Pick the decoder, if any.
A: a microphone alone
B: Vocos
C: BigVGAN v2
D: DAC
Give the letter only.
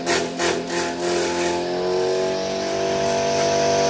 A